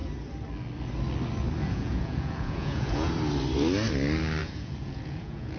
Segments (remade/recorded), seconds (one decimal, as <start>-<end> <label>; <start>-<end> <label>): 0.0-1.6 recorded; 1.6-3.1 remade; 3.1-4.4 recorded; 4.4-5.6 remade